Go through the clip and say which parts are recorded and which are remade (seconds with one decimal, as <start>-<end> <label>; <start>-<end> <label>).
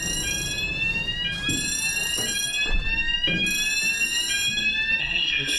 0.0-5.0 recorded; 5.0-5.6 remade